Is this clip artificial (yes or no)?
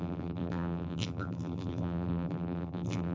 yes